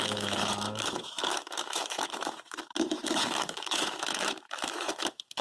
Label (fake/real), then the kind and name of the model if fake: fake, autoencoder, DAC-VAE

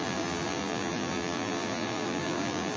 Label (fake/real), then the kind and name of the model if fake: fake, vocoder, BigVGAN v2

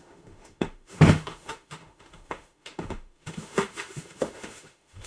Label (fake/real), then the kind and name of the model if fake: fake, autoencoder, DAC-VAE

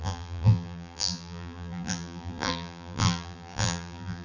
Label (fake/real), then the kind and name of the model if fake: fake, vocoder, BigVGAN v2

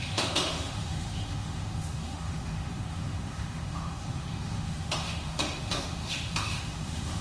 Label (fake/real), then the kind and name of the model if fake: fake, autoencoder, DAC-VAE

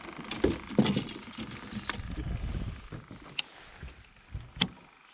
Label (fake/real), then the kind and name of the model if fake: real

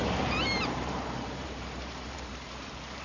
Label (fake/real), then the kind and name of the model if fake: fake, vocoder, BigVGAN v2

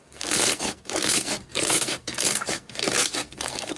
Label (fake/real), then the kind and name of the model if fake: fake, codec, SNAC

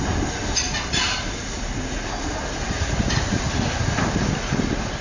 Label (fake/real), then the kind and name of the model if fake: real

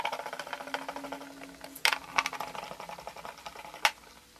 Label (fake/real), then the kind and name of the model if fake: real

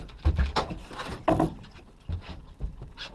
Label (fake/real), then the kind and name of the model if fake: real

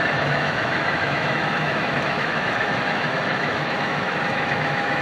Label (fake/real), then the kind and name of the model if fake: fake, autoencoder, DAC-VAE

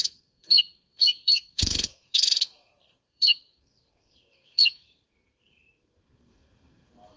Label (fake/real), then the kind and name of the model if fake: fake, codec, SNAC